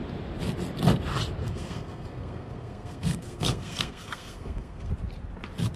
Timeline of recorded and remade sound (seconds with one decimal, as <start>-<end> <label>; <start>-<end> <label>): 0.0-1.4 recorded; 1.4-4.9 remade; 4.9-5.8 recorded